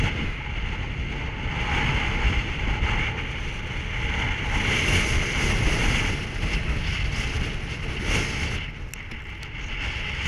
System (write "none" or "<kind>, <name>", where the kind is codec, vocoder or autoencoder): none